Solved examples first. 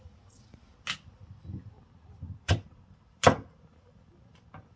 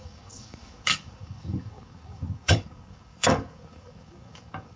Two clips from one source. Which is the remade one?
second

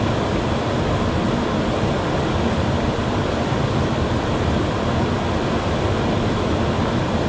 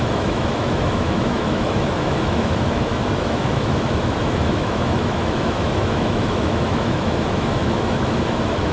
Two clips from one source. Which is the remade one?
second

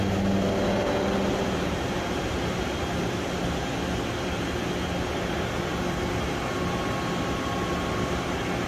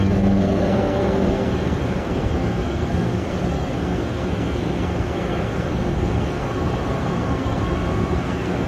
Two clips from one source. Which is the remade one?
second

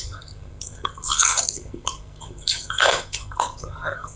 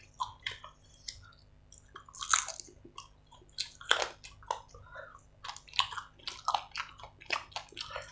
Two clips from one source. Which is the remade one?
first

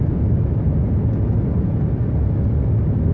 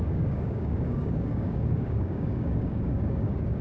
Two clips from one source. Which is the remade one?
second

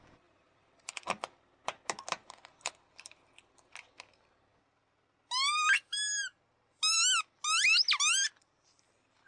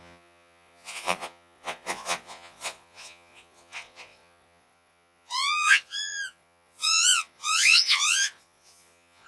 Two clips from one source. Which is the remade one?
second